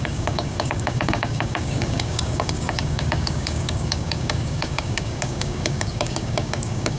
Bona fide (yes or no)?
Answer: no